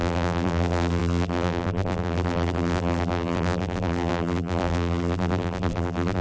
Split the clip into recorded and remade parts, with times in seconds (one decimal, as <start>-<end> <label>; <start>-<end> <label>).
0.0-6.2 remade